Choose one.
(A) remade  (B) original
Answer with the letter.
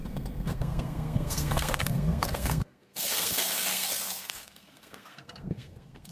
A